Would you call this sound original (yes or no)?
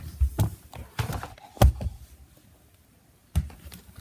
yes